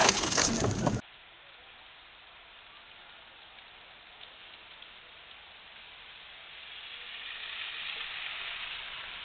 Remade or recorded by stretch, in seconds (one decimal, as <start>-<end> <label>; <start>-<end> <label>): 0.0-0.5 remade; 0.5-9.2 recorded